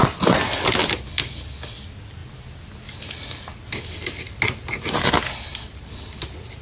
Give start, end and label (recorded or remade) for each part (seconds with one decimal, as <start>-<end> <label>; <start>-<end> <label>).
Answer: 0.0-6.6 recorded